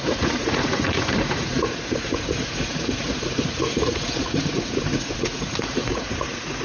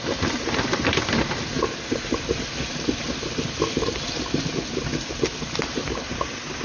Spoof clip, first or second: first